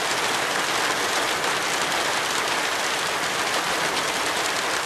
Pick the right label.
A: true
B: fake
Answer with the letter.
B